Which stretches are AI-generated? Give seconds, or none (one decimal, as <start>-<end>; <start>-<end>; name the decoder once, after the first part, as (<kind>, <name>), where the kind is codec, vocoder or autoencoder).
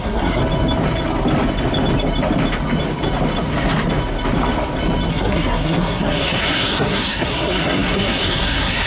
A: 0.0-0.4 (codec, SNAC); 5.1-8.9